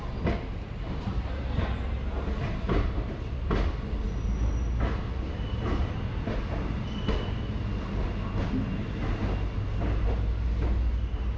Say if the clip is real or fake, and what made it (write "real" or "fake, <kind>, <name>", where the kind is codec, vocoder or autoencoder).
real